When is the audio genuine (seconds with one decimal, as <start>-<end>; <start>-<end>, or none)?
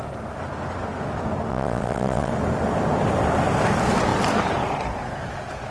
0.0-1.5; 2.3-5.7